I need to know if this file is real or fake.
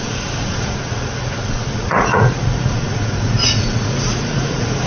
fake